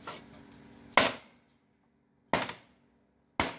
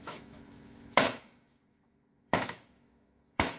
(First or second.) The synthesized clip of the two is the second